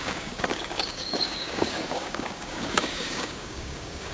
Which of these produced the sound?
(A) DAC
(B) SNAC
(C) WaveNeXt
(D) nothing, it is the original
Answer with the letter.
A